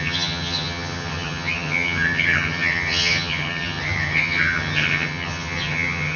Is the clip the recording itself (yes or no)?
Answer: no